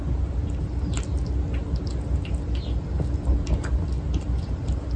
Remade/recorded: recorded